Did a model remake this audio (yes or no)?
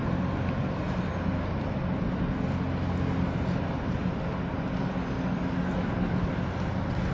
no